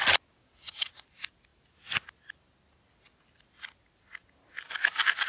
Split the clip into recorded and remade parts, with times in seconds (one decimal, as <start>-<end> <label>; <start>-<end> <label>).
0.0-0.4 recorded; 0.4-1.0 remade; 1.0-5.3 recorded